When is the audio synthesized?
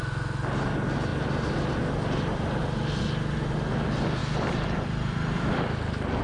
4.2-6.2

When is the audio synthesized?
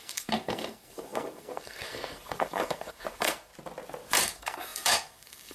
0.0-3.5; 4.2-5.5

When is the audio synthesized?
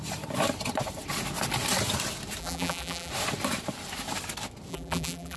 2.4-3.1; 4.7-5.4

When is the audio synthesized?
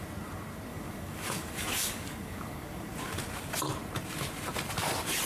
0.7-3.1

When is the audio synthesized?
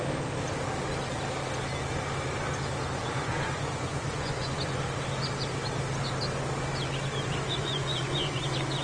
3.0-4.8; 7.6-8.4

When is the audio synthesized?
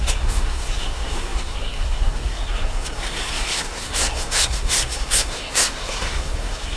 0.0-6.8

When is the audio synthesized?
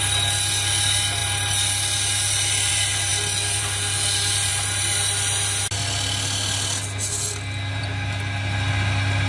none